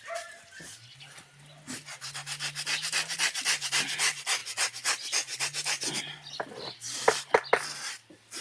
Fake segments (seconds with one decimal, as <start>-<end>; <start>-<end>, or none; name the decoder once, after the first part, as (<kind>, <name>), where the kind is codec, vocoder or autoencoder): none